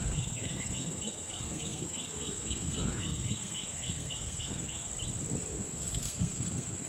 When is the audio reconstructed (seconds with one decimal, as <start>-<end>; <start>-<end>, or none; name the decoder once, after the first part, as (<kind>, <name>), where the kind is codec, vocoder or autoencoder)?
0.0-4.9 (codec, SNAC); 5.5-6.9